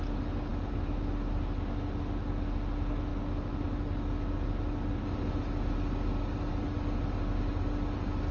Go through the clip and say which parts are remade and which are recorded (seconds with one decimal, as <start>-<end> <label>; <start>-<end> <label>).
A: 0.0-8.3 recorded